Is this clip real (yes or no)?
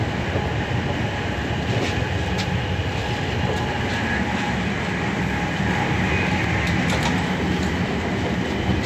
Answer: yes